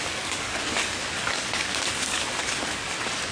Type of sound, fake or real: fake